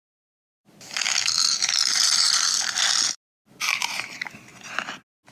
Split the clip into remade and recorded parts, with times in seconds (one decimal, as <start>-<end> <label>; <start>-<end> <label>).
0.0-0.5 recorded; 0.5-2.8 remade; 2.8-5.3 recorded